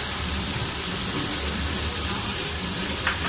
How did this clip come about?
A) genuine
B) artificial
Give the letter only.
A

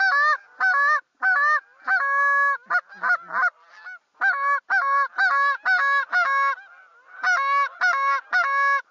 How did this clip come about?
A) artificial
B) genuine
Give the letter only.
B